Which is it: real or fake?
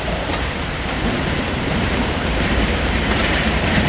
fake